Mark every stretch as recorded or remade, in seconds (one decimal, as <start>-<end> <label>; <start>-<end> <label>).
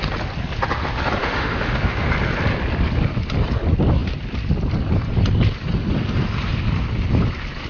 0.0-1.2 recorded; 1.2-2.1 remade; 2.1-7.7 recorded